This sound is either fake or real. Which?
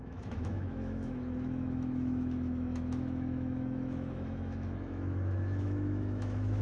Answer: fake